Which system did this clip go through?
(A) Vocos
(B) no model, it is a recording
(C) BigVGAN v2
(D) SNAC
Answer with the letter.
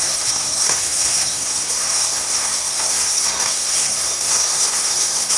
D